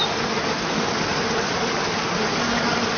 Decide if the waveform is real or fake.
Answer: real